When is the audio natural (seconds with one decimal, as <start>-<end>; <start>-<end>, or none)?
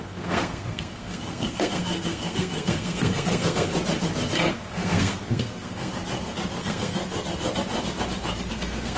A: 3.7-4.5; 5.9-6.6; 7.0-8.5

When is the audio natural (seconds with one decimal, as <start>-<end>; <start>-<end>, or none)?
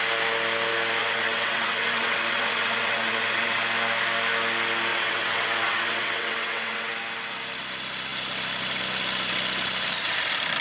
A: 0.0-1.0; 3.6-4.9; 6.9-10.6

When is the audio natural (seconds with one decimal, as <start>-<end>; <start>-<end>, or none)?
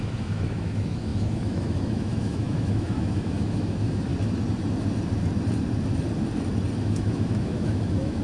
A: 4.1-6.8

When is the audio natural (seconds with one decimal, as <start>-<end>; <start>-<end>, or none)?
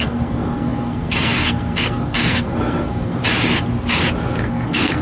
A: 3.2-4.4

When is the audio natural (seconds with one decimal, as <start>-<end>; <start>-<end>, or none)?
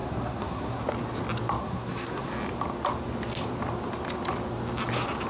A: 0.8-1.6; 2.3-5.3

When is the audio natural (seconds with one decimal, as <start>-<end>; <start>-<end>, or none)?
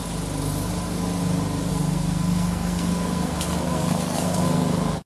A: 0.0-1.7